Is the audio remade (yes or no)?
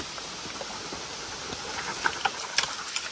no